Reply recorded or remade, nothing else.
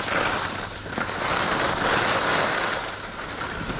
recorded